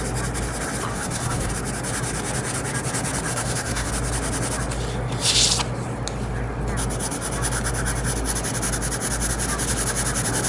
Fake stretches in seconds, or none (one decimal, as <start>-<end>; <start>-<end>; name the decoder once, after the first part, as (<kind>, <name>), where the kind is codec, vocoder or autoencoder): 0.9-1.5 (codec, SNAC); 3.3-3.9